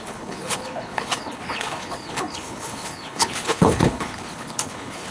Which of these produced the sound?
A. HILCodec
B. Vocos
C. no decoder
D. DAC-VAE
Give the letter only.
A